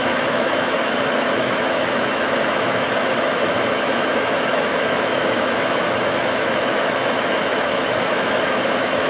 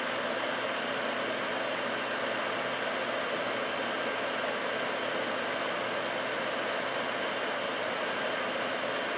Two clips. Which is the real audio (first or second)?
second